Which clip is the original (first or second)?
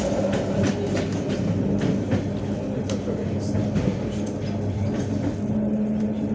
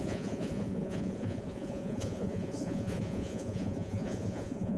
first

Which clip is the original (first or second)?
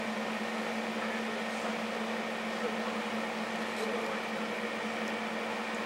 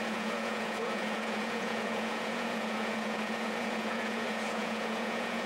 first